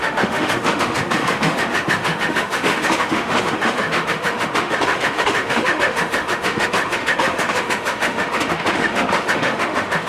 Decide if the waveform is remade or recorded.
remade